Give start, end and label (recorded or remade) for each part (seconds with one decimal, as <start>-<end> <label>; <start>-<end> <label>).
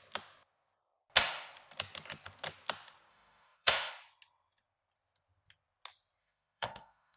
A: 0.0-3.1 recorded; 3.1-3.9 remade; 3.9-6.2 recorded; 6.2-7.2 remade